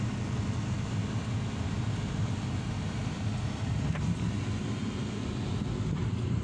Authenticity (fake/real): real